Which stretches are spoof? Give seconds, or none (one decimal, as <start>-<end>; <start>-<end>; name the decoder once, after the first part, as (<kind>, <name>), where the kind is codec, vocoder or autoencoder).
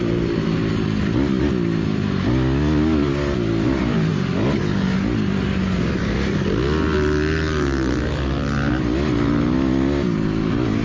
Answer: none